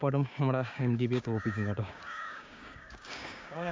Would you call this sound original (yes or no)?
no